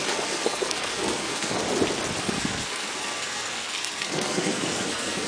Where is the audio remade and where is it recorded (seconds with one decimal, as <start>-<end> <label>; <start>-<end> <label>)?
0.0-1.6 remade; 1.6-2.2 recorded; 2.2-5.3 remade

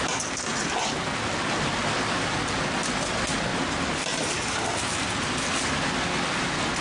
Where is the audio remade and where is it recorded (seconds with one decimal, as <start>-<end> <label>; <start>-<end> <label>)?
0.0-6.8 recorded

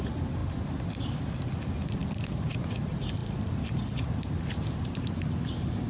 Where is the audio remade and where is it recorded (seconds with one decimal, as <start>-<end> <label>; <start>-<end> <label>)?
0.0-5.9 recorded

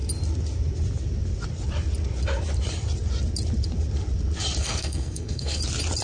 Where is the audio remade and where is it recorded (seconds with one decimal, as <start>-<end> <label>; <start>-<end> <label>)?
0.0-4.6 recorded; 4.6-5.6 remade; 5.6-6.0 recorded

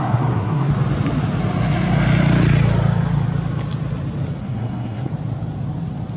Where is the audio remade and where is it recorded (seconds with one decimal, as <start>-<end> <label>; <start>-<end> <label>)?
0.0-0.7 remade; 0.7-4.4 recorded; 4.4-5.1 remade; 5.1-6.2 recorded